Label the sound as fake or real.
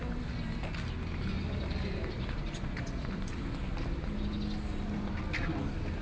real